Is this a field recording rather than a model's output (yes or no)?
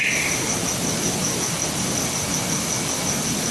yes